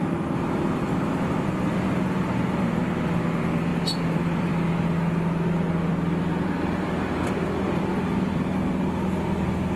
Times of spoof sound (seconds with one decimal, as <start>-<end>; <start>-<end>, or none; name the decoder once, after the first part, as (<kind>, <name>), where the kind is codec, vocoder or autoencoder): 3.7-4.5 (vocoder, BigVGAN v2)